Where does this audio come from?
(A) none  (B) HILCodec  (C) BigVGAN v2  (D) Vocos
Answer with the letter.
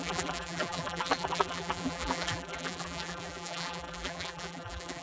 C